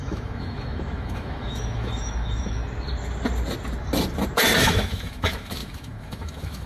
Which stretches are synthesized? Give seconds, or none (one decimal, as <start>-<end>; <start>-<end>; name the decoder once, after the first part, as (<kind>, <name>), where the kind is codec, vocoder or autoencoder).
0.0-2.6 (autoencoder, DAC-VAE); 4.6-6.7